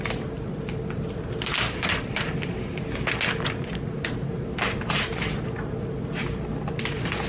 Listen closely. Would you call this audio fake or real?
real